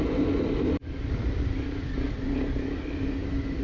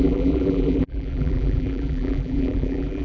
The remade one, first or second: second